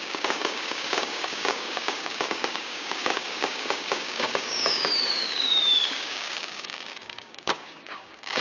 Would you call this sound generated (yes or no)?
yes